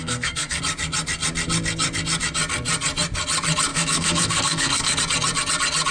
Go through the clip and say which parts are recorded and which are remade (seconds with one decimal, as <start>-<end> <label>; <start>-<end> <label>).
0.0-0.6 remade; 0.6-3.7 recorded; 3.7-5.0 remade; 5.0-5.9 recorded